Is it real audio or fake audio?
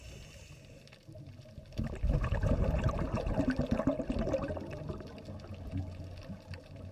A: real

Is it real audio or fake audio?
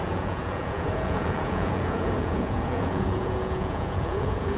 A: fake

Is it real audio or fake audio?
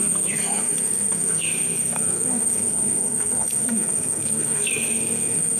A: fake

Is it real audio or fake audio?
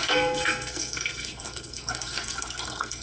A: fake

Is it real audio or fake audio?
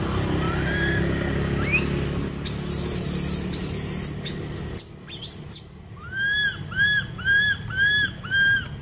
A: real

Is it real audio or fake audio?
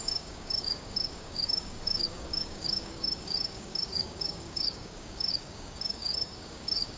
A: fake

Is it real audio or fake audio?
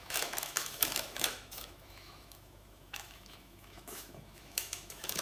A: fake